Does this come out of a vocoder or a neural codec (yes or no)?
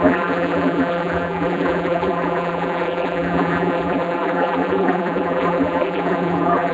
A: yes